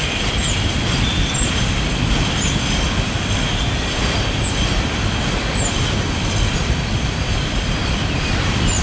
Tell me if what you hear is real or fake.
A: fake